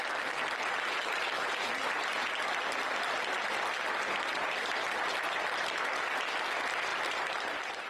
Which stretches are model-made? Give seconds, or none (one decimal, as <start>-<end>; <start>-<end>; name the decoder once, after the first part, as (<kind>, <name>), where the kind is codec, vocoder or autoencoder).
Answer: none